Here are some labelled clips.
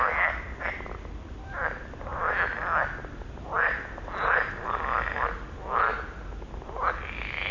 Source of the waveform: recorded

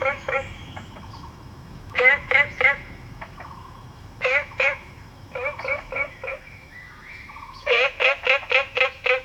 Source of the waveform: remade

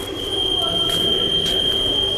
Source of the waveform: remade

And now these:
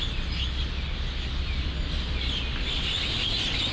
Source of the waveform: recorded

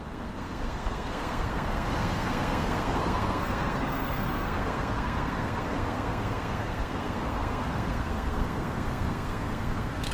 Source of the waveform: remade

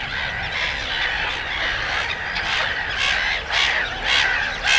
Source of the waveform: recorded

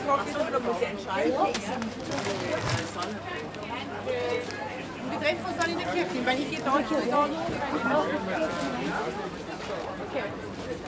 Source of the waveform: recorded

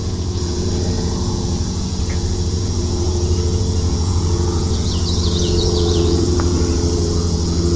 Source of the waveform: remade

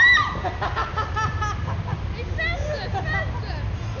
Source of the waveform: recorded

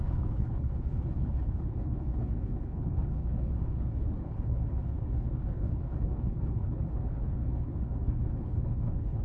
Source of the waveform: remade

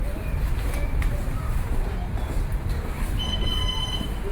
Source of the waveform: recorded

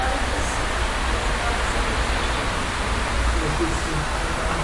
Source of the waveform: recorded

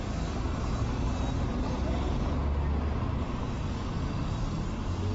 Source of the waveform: recorded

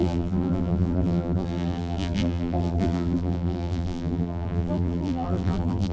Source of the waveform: remade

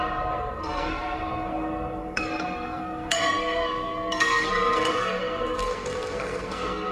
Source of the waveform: remade